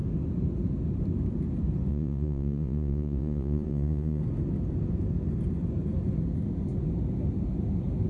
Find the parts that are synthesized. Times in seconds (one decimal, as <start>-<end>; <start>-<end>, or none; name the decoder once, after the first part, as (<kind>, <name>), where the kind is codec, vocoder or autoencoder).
1.9-4.2 (vocoder, Vocos)